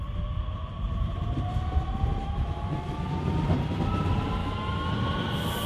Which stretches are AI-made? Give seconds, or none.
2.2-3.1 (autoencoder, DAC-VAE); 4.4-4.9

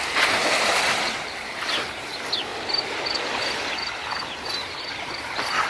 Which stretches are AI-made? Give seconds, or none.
none

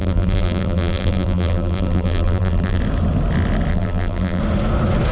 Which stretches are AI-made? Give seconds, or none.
0.0-2.8 (vocoder, BigVGAN v2); 3.7-4.4

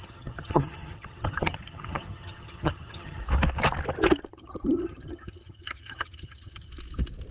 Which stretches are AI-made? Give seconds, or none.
0.0-3.2 (vocoder, HiFi-GAN); 4.3-6.7

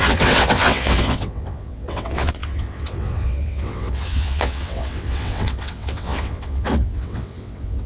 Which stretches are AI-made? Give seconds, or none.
0.0-7.9 (vocoder, WaveNeXt)

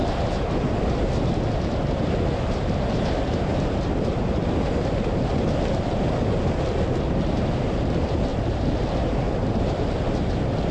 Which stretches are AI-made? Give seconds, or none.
none

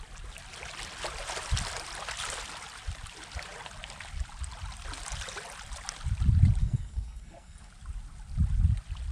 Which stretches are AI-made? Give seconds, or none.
6.6-7.7 (codec, SNAC)